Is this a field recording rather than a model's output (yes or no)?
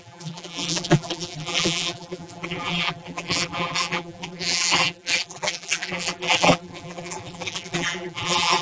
no